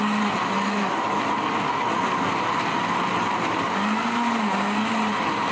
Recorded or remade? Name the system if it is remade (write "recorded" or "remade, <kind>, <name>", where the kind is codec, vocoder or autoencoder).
recorded